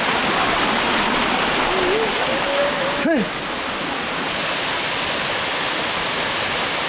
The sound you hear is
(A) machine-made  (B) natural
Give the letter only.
B